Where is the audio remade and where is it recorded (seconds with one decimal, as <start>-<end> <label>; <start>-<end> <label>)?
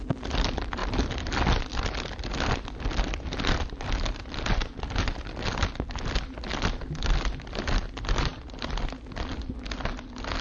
0.0-10.4 recorded